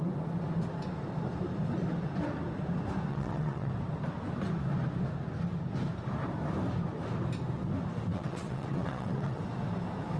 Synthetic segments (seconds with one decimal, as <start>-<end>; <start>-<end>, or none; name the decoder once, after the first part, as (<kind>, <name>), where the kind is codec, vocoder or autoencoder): 3.1-3.7 (vocoder, WaveNeXt); 8.1-9.4